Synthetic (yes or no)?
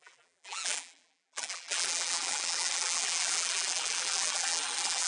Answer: yes